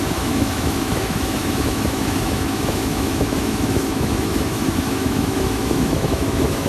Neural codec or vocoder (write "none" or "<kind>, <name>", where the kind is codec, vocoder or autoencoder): autoencoder, DAC-VAE